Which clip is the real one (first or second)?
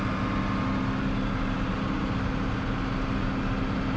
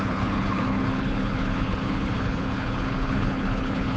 first